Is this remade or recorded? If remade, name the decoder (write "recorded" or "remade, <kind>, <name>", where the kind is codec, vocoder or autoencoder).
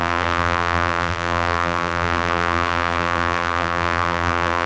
remade, vocoder, BigVGAN v2